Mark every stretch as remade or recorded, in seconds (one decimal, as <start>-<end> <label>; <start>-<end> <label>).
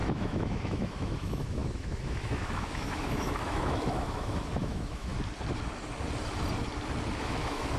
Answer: 0.0-5.1 remade; 5.1-7.2 recorded; 7.2-7.8 remade